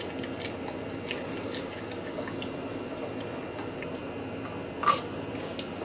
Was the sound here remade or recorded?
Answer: recorded